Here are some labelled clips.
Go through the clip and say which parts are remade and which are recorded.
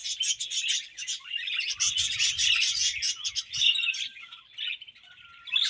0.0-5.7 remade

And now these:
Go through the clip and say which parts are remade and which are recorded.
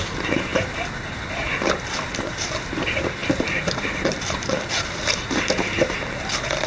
0.0-3.2 recorded; 3.2-5.9 remade; 5.9-6.7 recorded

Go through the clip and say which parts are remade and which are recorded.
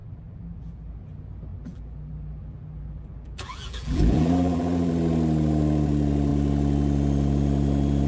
0.0-0.9 remade; 0.9-1.5 recorded; 1.5-4.9 remade; 4.9-8.1 recorded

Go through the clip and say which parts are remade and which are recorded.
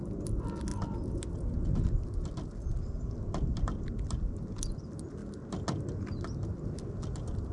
0.0-7.5 recorded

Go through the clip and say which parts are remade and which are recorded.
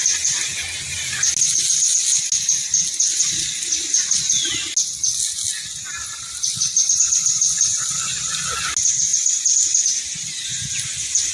0.0-11.3 recorded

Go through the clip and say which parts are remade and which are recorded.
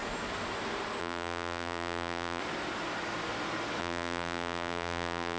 0.0-1.0 recorded; 1.0-2.4 remade; 2.4-3.8 recorded; 3.8-5.4 remade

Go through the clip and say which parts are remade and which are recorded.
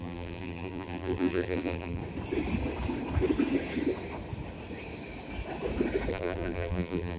0.0-2.0 remade; 2.0-6.1 recorded; 6.1-7.2 remade